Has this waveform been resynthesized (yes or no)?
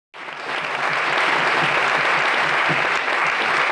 no